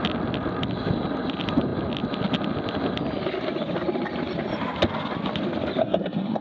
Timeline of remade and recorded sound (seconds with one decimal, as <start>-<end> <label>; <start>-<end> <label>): 0.0-5.8 recorded; 5.8-6.4 remade